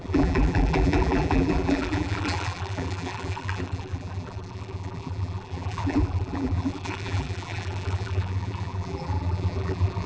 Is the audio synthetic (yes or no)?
yes